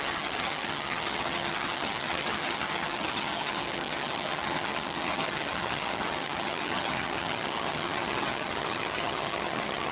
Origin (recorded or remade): remade